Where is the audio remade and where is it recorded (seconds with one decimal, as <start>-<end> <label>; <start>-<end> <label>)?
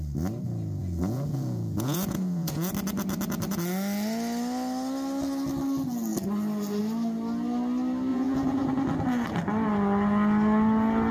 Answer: 0.0-0.8 recorded; 0.8-2.7 remade; 2.7-8.1 recorded; 8.1-8.7 remade; 8.7-11.1 recorded